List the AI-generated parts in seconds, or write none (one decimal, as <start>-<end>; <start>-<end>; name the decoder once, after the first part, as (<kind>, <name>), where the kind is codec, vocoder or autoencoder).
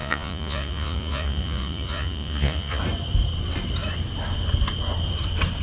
0.0-2.8 (vocoder, Vocos)